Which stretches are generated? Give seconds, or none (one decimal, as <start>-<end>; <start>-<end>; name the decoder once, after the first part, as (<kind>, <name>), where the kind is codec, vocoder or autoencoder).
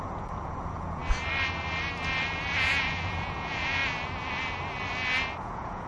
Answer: 0.0-1.0 (vocoder, Vocos); 2.5-3.8; 5.4-5.9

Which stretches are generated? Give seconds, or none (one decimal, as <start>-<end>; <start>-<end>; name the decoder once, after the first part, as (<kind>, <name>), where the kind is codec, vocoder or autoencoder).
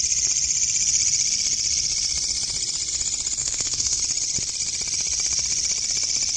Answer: 3.4-4.0 (codec, SNAC)